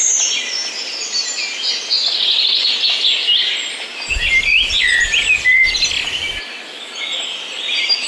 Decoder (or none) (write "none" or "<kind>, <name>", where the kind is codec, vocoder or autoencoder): none